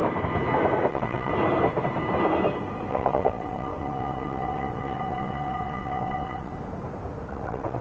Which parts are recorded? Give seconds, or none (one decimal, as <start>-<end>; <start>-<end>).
0.0-0.9; 1.3-2.9; 6.5-7.3